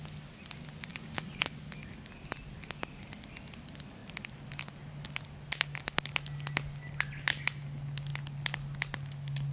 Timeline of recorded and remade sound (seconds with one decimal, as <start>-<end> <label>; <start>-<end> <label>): 0.0-0.9 recorded; 0.9-1.6 remade; 1.6-9.5 recorded

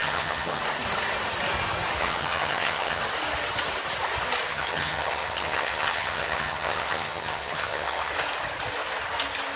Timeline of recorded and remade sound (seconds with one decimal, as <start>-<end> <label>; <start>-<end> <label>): 0.0-0.6 remade; 0.6-2.0 recorded; 2.0-3.0 remade; 3.0-4.5 recorded; 4.5-8.1 remade; 8.1-9.6 recorded

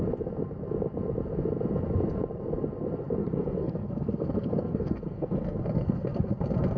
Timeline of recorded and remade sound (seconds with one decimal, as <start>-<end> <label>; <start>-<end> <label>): 0.0-3.2 recorded; 3.2-6.3 remade; 6.3-6.8 recorded